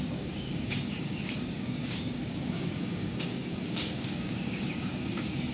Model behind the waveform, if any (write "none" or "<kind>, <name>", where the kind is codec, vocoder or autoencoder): codec, DAC